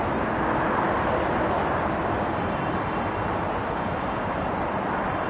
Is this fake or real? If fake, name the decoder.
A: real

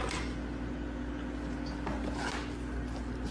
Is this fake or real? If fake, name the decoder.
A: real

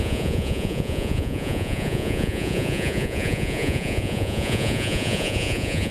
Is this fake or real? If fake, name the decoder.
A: fake, vocoder, Vocos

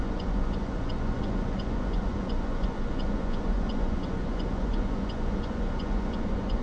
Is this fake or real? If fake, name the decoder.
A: fake, vocoder, Vocos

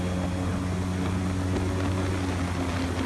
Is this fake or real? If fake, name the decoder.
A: real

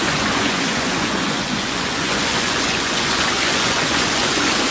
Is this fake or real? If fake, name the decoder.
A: fake, vocoder, Vocos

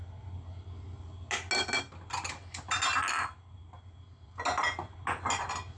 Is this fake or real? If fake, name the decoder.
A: real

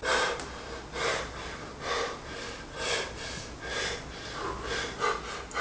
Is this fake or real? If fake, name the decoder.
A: real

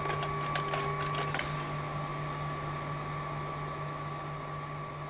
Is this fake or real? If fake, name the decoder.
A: real